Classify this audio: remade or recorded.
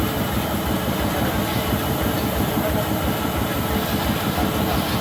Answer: recorded